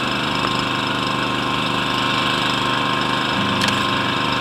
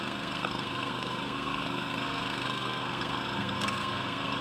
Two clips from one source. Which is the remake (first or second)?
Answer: second